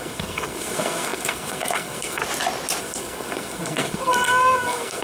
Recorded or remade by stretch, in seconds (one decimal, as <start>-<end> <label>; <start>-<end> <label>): 0.0-2.2 remade; 2.2-2.8 recorded; 2.8-5.0 remade